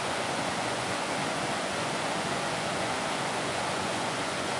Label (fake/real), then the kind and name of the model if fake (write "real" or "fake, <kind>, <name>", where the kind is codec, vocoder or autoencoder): fake, vocoder, Vocos